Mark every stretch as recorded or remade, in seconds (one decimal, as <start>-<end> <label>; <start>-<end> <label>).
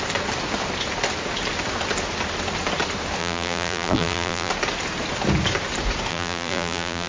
0.0-3.2 recorded; 3.2-4.5 remade; 4.5-6.1 recorded; 6.1-7.1 remade